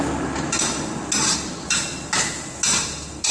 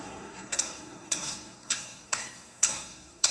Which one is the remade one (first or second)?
second